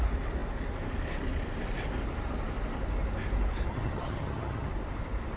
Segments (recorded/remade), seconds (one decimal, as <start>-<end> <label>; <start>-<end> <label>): 0.0-3.7 recorded; 3.7-4.7 remade; 4.7-5.4 recorded